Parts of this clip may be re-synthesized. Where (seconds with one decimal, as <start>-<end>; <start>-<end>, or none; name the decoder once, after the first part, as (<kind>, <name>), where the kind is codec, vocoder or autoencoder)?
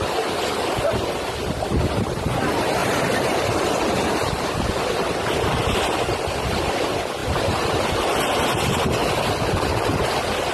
2.8-4.5 (vocoder, BigVGAN v2); 7.2-7.9